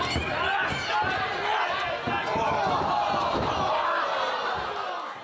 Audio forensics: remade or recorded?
recorded